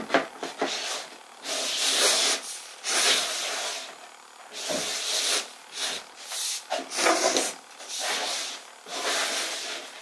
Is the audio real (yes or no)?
yes